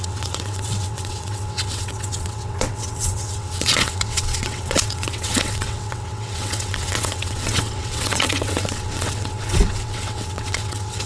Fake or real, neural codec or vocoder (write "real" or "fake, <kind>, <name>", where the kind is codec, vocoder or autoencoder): fake, vocoder, WaveNeXt